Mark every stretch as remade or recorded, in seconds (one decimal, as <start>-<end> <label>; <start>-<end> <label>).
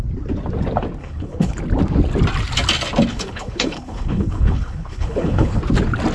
0.0-1.0 recorded; 1.0-1.6 remade; 1.6-3.1 recorded; 3.1-5.6 remade; 5.6-6.1 recorded